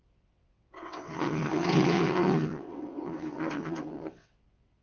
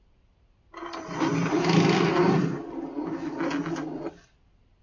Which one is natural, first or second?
second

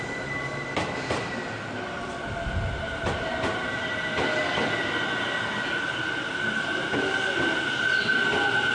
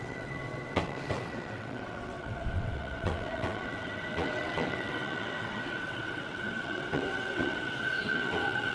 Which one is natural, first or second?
first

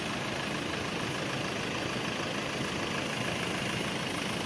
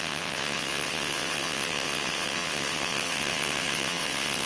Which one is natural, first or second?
first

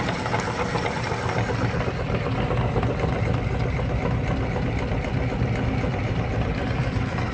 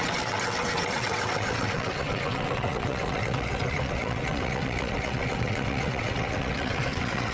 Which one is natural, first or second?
first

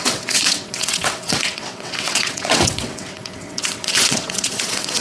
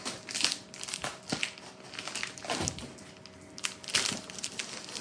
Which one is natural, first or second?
second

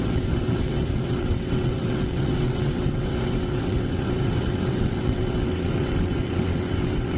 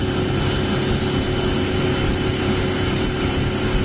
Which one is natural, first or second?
second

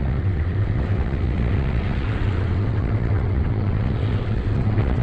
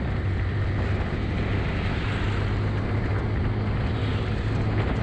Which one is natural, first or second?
second